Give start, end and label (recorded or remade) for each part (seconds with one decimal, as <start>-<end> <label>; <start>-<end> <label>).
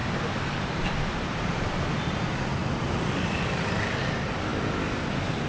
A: 0.0-2.4 remade; 2.4-2.8 recorded; 2.8-4.0 remade; 4.0-5.5 recorded